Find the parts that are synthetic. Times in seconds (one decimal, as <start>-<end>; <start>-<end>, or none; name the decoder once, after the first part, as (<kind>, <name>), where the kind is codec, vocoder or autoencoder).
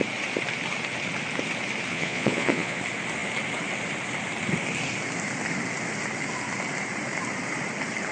1.9-2.8 (vocoder, Vocos)